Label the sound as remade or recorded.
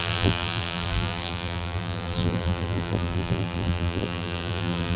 remade